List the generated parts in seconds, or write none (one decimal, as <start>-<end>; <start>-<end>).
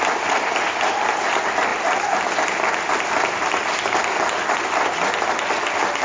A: none